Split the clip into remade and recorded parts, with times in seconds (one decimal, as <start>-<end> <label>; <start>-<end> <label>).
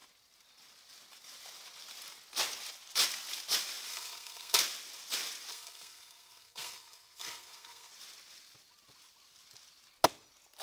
0.0-3.9 recorded; 3.9-4.6 remade; 4.6-5.5 recorded; 5.5-7.9 remade; 7.9-10.6 recorded